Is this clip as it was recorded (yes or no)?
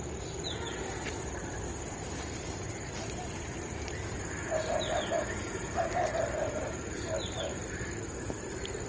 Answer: no